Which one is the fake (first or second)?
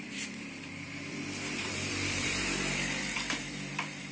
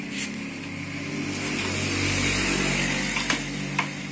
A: first